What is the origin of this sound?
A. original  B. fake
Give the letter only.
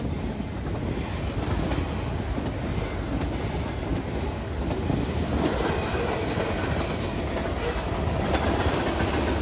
A